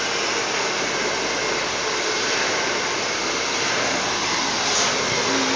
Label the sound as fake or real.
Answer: real